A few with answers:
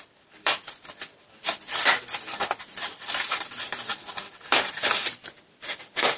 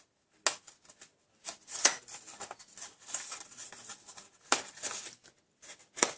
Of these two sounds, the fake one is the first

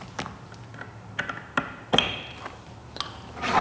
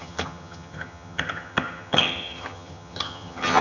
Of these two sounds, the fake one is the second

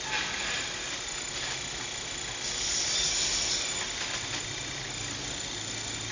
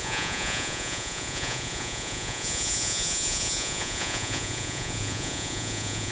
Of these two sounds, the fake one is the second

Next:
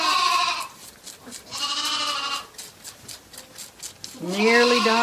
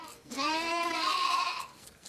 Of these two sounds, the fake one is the second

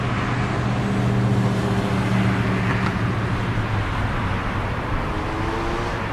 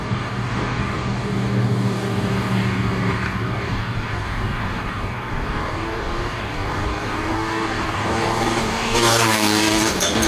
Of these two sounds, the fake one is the second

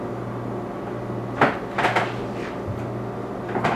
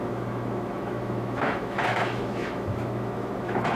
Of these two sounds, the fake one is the second